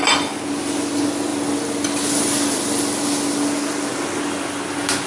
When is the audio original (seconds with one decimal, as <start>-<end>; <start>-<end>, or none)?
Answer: 0.0-5.1